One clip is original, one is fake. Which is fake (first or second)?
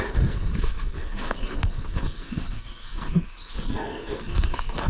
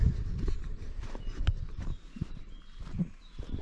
first